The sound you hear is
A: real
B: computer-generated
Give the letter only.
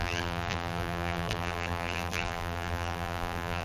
B